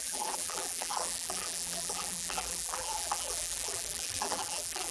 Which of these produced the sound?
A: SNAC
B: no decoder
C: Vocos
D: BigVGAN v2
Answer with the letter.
D